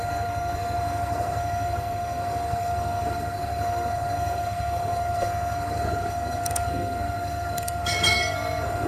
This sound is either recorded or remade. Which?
remade